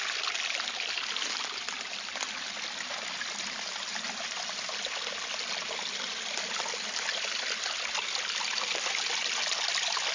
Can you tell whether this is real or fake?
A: real